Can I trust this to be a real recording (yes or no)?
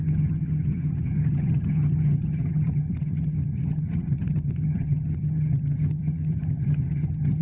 no